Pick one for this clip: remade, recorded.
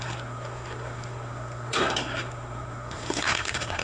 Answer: remade